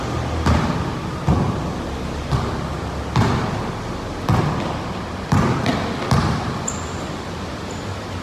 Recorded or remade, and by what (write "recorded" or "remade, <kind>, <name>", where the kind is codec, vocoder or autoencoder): recorded